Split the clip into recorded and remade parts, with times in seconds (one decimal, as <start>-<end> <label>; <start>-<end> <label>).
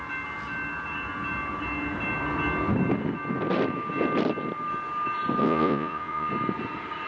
0.0-5.4 recorded; 5.4-6.3 remade; 6.3-7.1 recorded